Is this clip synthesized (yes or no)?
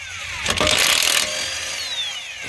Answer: no